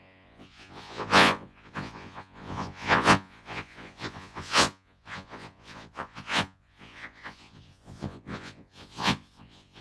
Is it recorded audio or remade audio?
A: remade